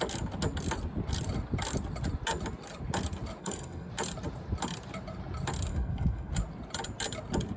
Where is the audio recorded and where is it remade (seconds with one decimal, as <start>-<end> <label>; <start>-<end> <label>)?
0.0-3.4 recorded; 3.4-3.9 remade; 3.9-5.7 recorded; 5.7-6.3 remade; 6.3-7.6 recorded